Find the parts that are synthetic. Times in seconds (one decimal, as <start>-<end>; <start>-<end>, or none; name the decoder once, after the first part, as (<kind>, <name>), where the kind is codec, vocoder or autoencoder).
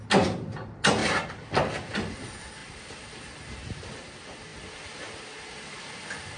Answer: none